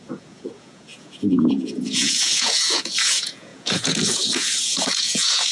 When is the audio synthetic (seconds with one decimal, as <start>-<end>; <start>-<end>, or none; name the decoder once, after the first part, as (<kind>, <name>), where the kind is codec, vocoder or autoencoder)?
0.0-5.5 (vocoder, Vocos)